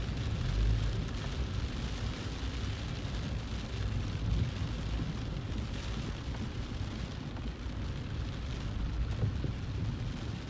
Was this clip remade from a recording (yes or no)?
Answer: no